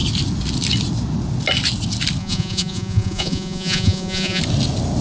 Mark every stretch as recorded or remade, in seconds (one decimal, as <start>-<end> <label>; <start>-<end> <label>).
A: 0.0-2.2 recorded; 2.2-4.4 remade; 4.4-5.0 recorded